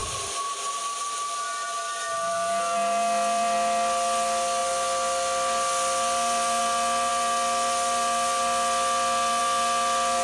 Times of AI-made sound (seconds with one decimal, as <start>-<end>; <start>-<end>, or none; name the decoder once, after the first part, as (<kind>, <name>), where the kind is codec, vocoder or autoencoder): none

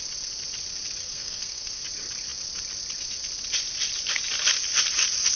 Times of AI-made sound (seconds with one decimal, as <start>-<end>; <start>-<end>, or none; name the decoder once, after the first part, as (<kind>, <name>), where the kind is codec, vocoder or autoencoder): 1.0-1.8 (codec, SNAC)